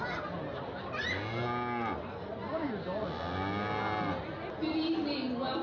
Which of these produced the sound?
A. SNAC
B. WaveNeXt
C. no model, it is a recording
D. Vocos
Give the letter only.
C